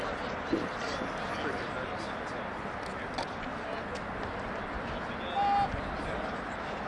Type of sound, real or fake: real